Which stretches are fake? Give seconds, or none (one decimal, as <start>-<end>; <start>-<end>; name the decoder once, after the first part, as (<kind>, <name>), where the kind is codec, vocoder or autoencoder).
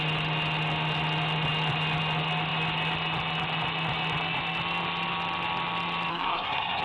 6.1-6.8 (codec, SNAC)